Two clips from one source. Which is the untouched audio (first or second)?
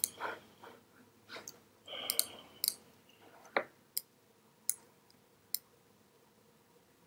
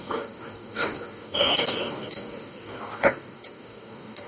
first